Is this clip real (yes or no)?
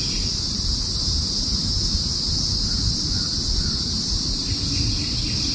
yes